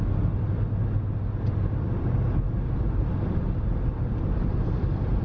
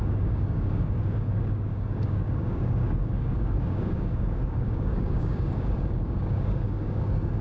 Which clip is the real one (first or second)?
first